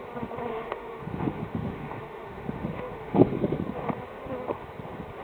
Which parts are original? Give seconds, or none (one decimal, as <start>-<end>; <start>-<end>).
0.0-0.5; 3.6-5.2

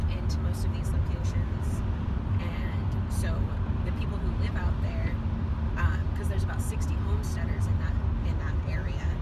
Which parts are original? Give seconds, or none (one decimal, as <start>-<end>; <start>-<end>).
0.0-0.9; 5.4-9.2

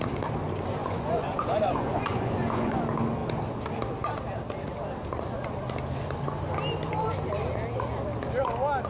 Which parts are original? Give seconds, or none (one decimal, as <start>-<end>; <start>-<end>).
0.0-0.8; 2.8-8.9

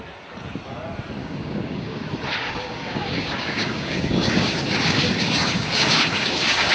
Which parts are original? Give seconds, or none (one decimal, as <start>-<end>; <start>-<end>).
0.0-1.2; 2.0-2.4

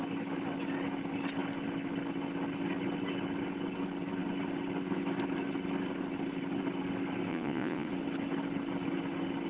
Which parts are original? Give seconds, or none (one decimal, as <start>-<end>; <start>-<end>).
0.0-7.3; 7.9-9.5